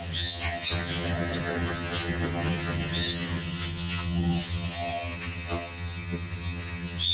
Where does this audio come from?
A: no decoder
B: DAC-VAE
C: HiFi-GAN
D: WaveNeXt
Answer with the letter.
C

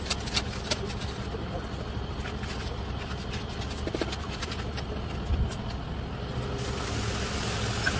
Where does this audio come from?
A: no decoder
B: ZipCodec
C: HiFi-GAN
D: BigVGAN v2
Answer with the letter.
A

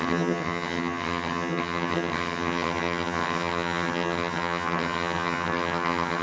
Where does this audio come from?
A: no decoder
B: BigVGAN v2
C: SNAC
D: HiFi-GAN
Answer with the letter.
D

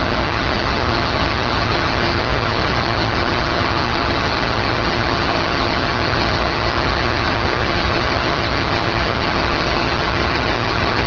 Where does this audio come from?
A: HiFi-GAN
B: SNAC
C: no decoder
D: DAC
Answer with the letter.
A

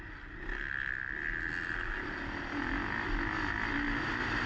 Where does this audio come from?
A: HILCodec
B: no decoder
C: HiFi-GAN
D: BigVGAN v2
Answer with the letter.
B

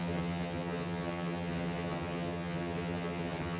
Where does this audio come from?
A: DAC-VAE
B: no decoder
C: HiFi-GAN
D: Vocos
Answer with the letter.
C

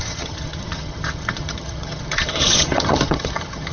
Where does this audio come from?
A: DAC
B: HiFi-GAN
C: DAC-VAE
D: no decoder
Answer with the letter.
B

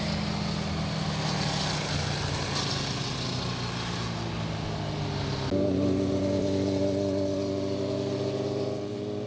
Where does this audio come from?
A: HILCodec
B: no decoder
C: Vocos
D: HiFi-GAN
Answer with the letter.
B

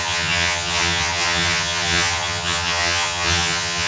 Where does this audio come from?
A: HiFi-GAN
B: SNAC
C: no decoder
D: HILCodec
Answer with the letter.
A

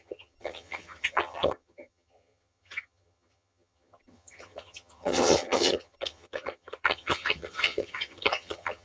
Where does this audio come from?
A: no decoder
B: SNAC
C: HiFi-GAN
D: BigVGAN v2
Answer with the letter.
C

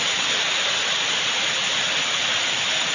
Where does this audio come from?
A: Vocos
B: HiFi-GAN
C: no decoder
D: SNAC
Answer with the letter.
C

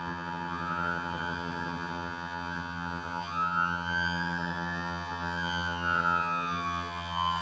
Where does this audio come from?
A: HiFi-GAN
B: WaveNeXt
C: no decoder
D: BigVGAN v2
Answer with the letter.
A